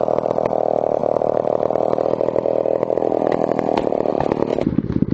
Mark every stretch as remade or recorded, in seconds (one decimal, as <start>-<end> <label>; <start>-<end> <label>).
0.0-5.1 recorded